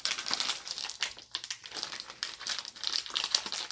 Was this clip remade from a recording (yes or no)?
no